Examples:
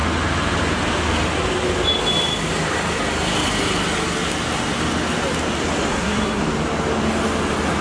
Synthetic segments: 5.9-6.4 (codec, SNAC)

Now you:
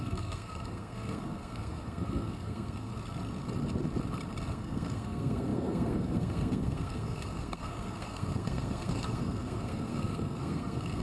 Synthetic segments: 0.0-2.9 (codec, SNAC); 4.5-11.0

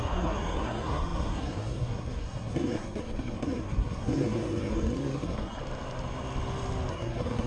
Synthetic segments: 0.0-5.6 (codec, SNAC); 6.9-7.5